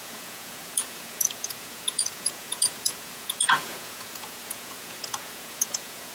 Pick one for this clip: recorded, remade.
remade